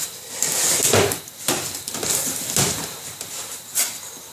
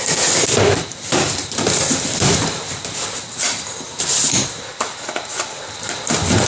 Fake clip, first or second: second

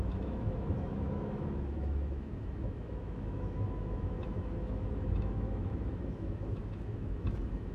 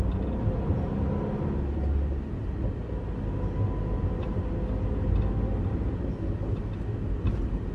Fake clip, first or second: first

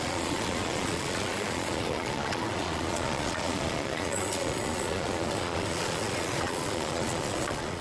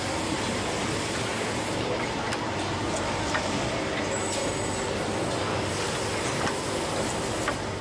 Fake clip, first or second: first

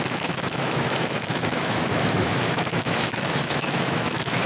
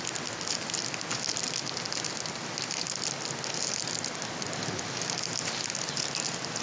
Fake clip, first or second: first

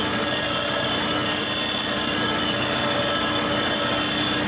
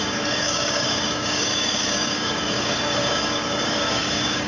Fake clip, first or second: second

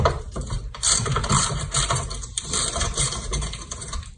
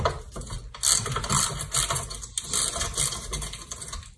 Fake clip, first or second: first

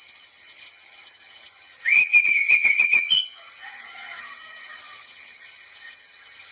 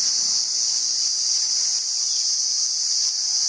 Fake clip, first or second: first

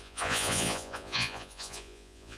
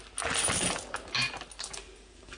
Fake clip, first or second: first